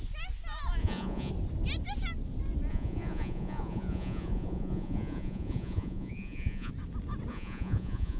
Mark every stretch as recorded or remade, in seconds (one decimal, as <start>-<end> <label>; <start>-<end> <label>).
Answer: 0.0-0.8 recorded; 0.8-1.3 remade; 1.3-2.7 recorded; 2.7-6.7 remade; 6.7-7.3 recorded; 7.3-8.2 remade